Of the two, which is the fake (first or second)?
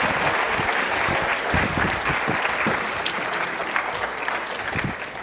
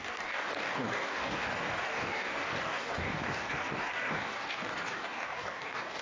second